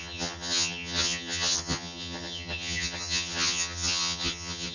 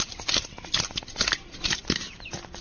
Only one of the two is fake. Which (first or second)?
first